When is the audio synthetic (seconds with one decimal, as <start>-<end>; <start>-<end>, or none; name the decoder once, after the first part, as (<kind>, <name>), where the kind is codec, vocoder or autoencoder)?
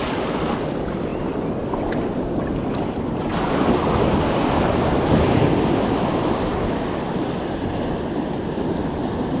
none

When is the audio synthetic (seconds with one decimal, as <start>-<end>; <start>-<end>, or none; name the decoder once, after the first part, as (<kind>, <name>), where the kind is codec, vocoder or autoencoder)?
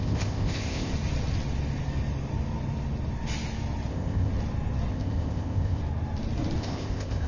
0.0-0.9 (codec, ZipCodec); 3.9-4.3; 4.9-5.8; 6.6-7.3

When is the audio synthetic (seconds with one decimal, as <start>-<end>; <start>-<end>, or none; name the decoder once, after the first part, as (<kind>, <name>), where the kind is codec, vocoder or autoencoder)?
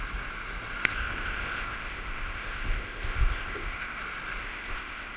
0.9-4.0 (codec, ZipCodec); 4.4-5.2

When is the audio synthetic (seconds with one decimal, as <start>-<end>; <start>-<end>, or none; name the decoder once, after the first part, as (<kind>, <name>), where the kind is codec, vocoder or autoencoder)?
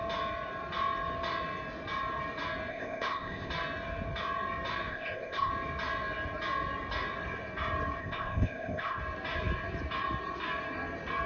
2.7-3.5 (codec, ZipCodec); 4.9-5.5; 8.0-9.0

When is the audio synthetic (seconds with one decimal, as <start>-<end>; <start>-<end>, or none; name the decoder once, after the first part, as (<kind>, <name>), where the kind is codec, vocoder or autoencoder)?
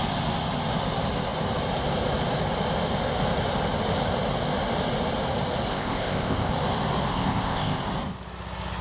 5.7-6.5 (codec, ZipCodec); 7.1-7.8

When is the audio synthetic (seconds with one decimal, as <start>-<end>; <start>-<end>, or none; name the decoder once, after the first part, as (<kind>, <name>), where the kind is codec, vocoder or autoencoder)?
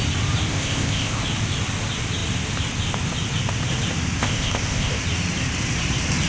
0.5-1.2 (codec, ZipCodec); 4.2-5.0